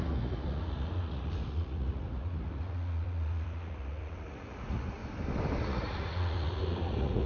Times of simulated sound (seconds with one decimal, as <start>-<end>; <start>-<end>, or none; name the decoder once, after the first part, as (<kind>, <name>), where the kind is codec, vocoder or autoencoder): 0.0-5.0 (vocoder, Vocos); 5.6-7.3